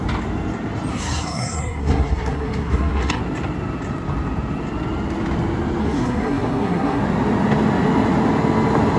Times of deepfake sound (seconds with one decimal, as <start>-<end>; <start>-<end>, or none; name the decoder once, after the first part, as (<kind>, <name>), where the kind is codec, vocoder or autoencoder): 0.9-3.2 (codec, SNAC); 5.8-7.0